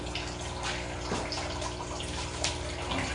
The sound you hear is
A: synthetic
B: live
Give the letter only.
B